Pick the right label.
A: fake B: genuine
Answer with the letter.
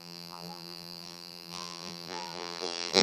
A